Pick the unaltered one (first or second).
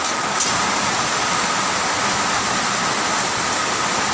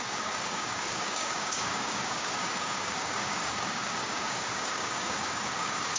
first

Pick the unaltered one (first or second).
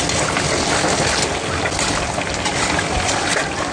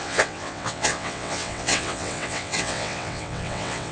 first